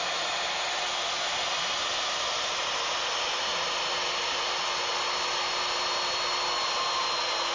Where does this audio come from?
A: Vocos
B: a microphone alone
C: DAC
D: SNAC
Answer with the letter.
B